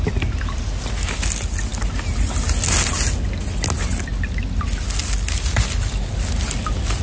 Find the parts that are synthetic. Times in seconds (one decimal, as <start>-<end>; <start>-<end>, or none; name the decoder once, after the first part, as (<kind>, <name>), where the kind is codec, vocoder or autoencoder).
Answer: none